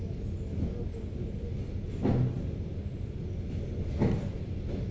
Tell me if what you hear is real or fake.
real